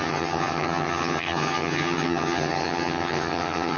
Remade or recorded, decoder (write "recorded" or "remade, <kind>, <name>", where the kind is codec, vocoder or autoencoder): remade, vocoder, HiFi-GAN